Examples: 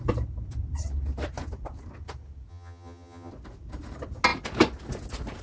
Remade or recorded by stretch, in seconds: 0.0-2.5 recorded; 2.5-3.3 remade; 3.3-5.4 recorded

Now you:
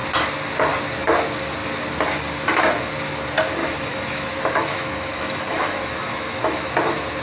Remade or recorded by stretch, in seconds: 0.0-3.6 recorded; 3.6-6.7 remade; 6.7-7.2 recorded

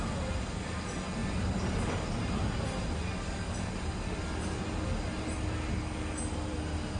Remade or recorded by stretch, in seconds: 0.0-7.0 recorded

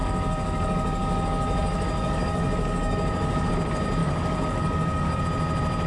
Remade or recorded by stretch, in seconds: 0.0-3.5 remade; 3.5-4.0 recorded; 4.0-5.2 remade; 5.2-5.9 recorded

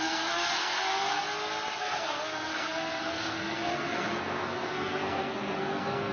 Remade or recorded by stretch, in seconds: 0.0-1.2 remade; 1.2-1.8 recorded; 1.8-6.1 remade